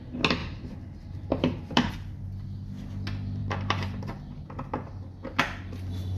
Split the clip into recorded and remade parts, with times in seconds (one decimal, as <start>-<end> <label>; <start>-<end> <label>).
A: 0.0-0.4 recorded; 0.4-1.9 remade; 1.9-3.4 recorded; 3.4-4.0 remade; 4.0-6.2 recorded